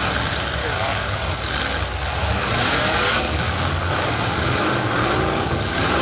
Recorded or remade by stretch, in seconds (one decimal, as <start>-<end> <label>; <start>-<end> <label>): 0.0-0.6 recorded; 0.6-1.4 remade; 1.4-2.2 recorded; 2.2-6.0 remade